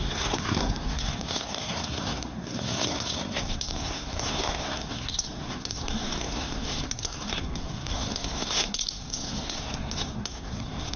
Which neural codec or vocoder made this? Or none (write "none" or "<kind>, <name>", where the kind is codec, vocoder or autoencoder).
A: codec, SNAC